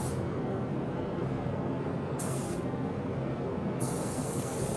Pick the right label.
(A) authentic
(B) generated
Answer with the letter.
B